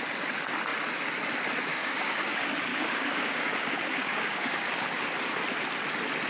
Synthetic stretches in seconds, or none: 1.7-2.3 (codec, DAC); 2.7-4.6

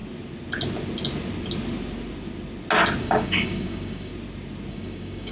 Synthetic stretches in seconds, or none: 3.0-4.1 (codec, DAC); 4.7-5.3

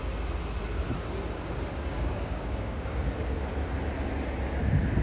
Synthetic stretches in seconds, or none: 1.7-3.3 (codec, DAC)

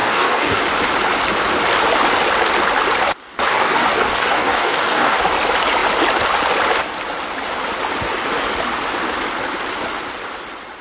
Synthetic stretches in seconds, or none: 0.0-0.6 (codec, DAC); 3.5-5.2